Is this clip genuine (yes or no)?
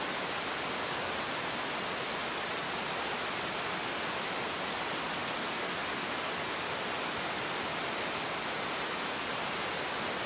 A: yes